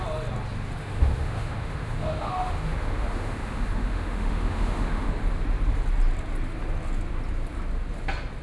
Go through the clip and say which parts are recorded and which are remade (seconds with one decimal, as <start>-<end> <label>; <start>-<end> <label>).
0.0-0.8 recorded; 0.8-5.1 remade; 5.1-8.4 recorded